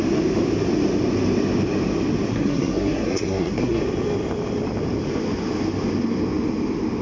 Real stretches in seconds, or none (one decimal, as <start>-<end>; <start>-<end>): 0.0-2.3; 3.8-7.0